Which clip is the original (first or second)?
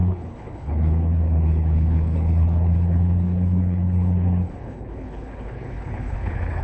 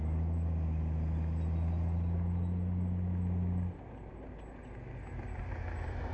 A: second